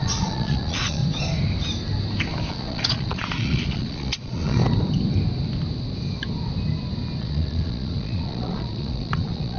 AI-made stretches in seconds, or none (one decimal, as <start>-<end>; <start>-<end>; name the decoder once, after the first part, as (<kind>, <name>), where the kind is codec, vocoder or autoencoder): 0.0-1.0 (vocoder, Vocos); 2.5-4.6; 7.2-9.6